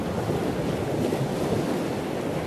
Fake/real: real